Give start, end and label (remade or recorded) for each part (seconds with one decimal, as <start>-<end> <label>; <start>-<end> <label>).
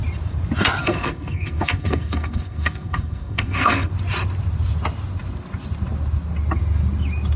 0.0-0.8 recorded; 0.8-3.9 remade; 3.9-7.4 recorded